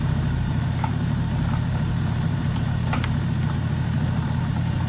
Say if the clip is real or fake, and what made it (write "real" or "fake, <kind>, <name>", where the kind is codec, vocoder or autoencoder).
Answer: fake, vocoder, BigVGAN v2